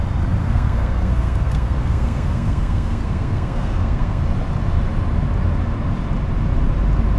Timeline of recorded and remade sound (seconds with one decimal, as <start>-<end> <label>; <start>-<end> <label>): 0.0-0.4 recorded; 0.4-4.2 remade; 4.2-7.2 recorded